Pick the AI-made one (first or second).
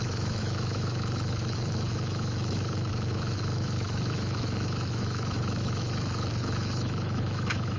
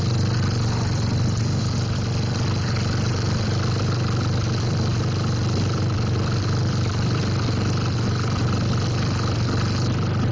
first